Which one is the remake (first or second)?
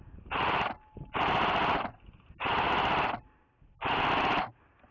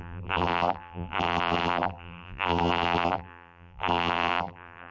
second